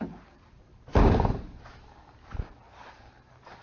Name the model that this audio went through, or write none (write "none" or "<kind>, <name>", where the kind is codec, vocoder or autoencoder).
vocoder, BigVGAN v2